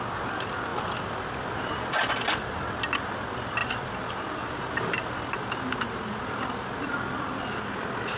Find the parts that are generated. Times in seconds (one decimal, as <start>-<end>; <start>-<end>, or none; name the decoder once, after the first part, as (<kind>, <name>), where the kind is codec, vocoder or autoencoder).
0.7-2.1 (vocoder, BigVGAN v2); 3.6-7.7

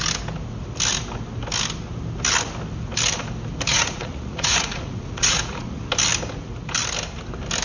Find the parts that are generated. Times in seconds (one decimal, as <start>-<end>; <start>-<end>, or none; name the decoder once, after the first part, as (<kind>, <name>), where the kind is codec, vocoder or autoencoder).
3.7-5.8 (vocoder, Vocos)

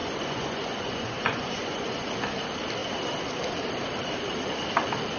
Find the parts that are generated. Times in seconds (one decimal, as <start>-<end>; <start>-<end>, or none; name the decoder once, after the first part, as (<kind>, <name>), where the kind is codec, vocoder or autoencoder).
0.0-2.1 (vocoder, Vocos)

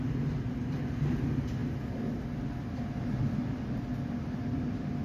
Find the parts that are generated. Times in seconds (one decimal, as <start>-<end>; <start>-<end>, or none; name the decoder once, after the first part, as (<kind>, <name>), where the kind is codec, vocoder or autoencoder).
none

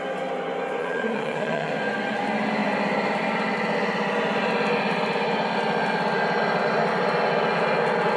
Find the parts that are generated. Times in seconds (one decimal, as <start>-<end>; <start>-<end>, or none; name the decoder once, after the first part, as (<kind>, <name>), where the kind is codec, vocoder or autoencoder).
0.8-1.7 (vocoder, Vocos)

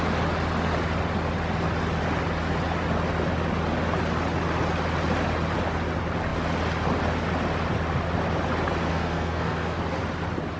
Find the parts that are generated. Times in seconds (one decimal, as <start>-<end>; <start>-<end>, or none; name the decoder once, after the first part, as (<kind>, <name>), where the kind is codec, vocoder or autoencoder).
8.9-9.8 (codec, SNAC)